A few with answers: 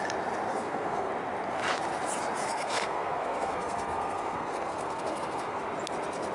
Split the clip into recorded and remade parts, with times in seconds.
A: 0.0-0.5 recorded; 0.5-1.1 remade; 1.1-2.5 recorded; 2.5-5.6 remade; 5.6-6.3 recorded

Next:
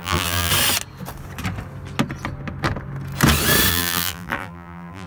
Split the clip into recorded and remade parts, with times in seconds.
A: 0.0-0.5 remade; 0.5-3.7 recorded; 3.7-5.1 remade

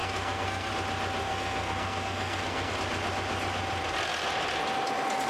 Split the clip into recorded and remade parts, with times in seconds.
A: 0.0-0.7 remade; 0.7-1.2 recorded; 1.2-2.7 remade; 2.7-5.3 recorded

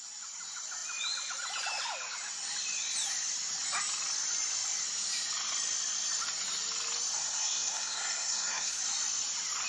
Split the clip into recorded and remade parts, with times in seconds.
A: 0.0-7.2 recorded; 7.2-8.8 remade; 8.8-9.7 recorded

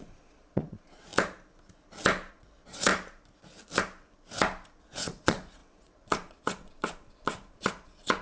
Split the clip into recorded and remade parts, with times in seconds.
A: 0.0-1.1 remade; 1.1-2.3 recorded; 2.3-2.9 remade; 2.9-4.8 recorded; 4.8-8.2 remade

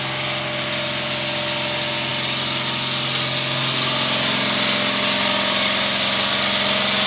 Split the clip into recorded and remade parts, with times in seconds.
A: 0.0-7.1 recorded

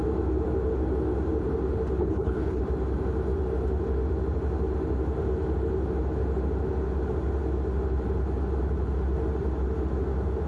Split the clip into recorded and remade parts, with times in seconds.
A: 0.0-2.0 recorded; 2.0-2.6 remade; 2.6-10.5 recorded

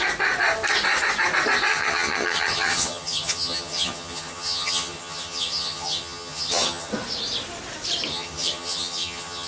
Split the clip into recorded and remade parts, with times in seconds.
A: 0.0-1.7 recorded; 1.7-6.9 remade; 6.9-8.1 recorded; 8.1-9.5 remade